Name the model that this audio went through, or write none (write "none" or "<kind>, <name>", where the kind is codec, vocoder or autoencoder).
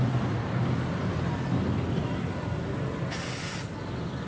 none